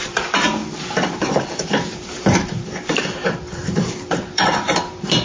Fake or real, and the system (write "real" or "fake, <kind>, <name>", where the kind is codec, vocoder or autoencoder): fake, vocoder, BigVGAN v2